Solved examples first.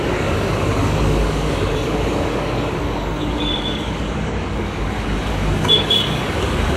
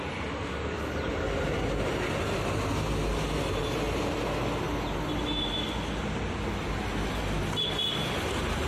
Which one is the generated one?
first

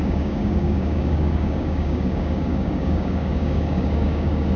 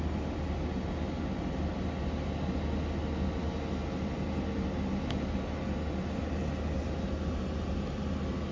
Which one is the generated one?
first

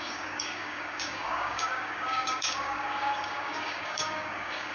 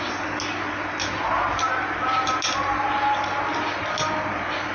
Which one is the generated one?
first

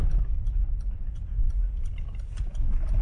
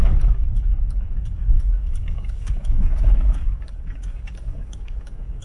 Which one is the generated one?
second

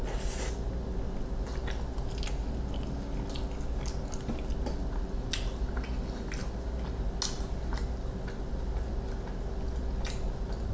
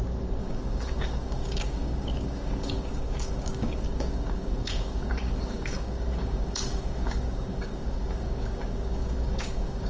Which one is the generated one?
second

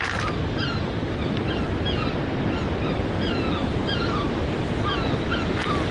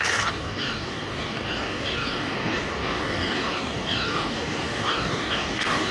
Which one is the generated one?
second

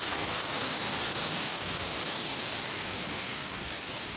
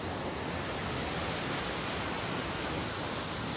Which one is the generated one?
first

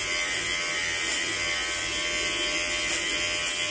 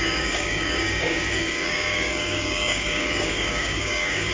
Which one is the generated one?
second